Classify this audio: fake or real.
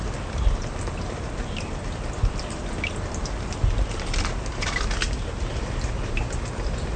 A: real